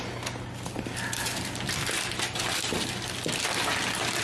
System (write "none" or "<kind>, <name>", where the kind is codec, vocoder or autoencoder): none